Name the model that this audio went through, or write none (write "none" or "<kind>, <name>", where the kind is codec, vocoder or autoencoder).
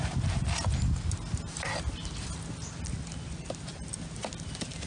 none